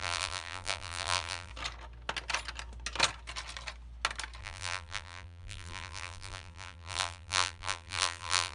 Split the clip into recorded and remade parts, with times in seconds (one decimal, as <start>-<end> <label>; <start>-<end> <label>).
0.0-1.5 remade; 1.5-4.4 recorded; 4.4-8.5 remade